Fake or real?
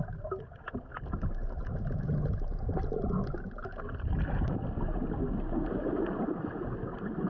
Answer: real